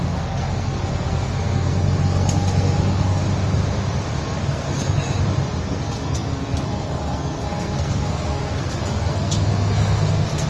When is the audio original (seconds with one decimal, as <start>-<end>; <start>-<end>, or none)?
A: 3.2-4.1; 5.0-5.6